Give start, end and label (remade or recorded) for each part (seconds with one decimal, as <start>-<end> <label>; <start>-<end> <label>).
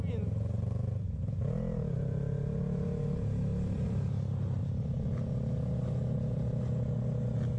0.0-3.5 recorded; 3.5-4.1 remade; 4.1-4.6 recorded; 4.6-5.2 remade; 5.2-7.6 recorded